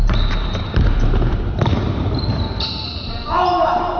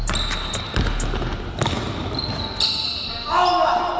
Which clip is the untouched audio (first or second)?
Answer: second